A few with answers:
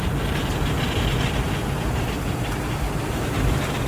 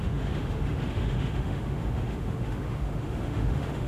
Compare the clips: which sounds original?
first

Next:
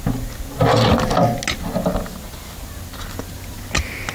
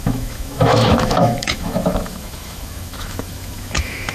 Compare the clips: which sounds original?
first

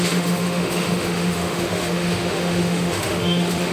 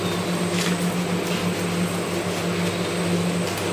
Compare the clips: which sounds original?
second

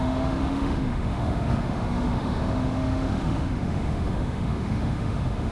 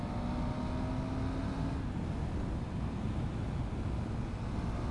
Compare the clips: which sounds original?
second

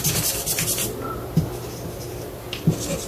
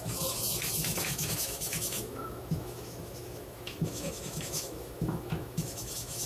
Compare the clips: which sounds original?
first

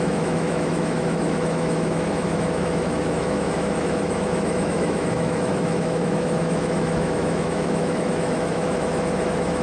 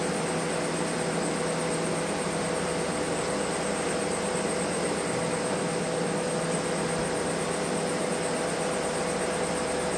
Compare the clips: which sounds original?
second